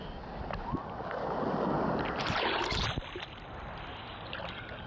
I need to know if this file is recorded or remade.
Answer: recorded